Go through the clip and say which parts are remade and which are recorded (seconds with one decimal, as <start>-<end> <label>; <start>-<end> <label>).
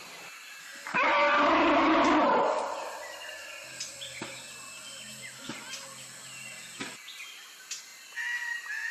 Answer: 0.0-8.9 recorded